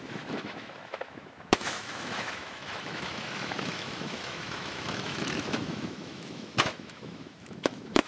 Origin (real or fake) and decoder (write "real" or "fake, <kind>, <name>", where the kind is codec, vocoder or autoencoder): fake, autoencoder, DAC-VAE